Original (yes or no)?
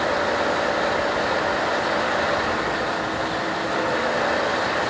yes